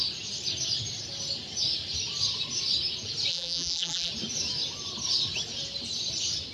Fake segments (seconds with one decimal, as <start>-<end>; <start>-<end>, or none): 3.3-4.1